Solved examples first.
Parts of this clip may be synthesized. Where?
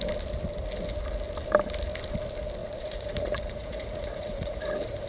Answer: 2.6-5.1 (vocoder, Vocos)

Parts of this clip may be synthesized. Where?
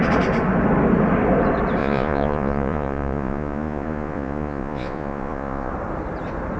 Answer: 1.8-5.7 (vocoder, Vocos)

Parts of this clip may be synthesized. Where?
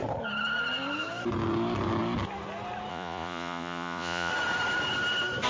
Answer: 2.9-4.3 (vocoder, Vocos)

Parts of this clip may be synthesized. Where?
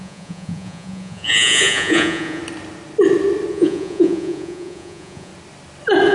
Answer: 0.0-2.4 (vocoder, Vocos); 3.5-5.3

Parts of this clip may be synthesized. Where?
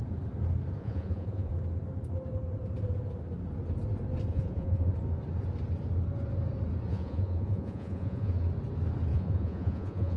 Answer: 0.8-1.5 (vocoder, Vocos); 4.3-4.9; 6.9-8.3; 9.1-10.2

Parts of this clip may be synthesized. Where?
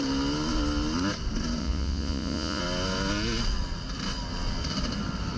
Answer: 1.6-2.6 (vocoder, Vocos)